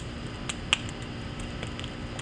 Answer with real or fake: real